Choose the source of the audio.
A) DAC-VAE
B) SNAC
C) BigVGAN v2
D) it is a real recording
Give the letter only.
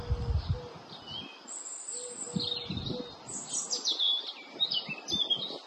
D